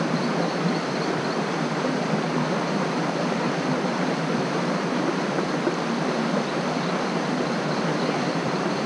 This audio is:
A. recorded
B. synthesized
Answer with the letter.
B